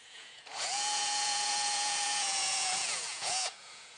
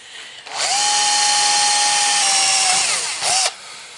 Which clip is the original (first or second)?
second